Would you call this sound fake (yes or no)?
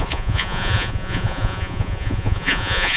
yes